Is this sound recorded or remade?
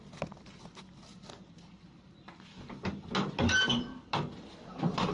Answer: recorded